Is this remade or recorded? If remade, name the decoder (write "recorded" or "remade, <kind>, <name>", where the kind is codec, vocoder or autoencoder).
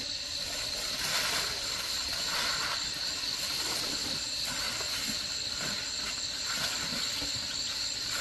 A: recorded